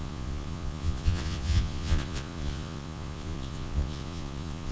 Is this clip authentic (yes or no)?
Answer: no